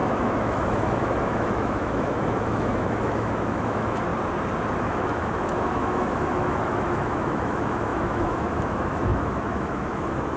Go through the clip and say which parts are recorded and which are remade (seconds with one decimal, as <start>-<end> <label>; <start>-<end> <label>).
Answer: 0.0-4.1 remade; 4.1-4.8 recorded; 4.8-10.4 remade